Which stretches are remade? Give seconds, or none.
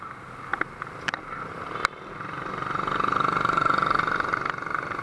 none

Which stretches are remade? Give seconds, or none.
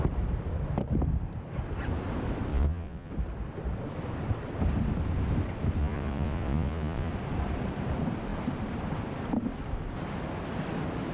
2.5-3.1 (vocoder, Vocos); 5.8-7.1